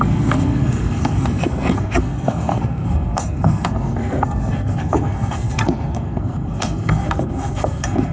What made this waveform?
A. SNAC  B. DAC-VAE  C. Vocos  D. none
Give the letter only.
A